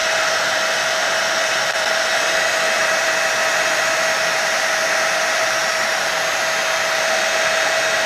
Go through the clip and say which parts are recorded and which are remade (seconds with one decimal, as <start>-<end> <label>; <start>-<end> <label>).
0.0-3.9 remade; 3.9-8.1 recorded

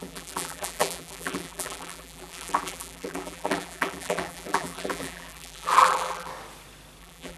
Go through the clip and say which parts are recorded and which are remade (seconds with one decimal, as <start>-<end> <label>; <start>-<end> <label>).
0.0-6.3 remade; 6.3-7.0 recorded; 7.0-7.4 remade